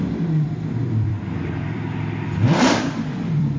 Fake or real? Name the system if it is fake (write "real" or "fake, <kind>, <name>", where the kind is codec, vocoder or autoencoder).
fake, vocoder, BigVGAN v2